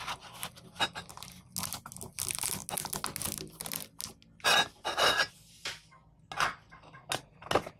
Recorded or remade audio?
recorded